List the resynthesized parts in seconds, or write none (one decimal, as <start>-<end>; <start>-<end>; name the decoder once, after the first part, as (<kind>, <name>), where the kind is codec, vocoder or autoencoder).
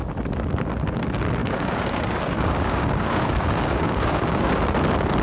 1.4-4.5 (codec, DAC)